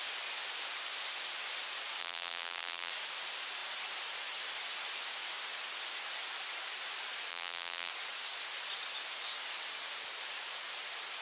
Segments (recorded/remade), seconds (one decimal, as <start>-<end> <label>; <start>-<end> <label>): 0.0-2.0 recorded; 2.0-2.9 remade; 2.9-7.3 recorded; 7.3-7.9 remade; 7.9-11.2 recorded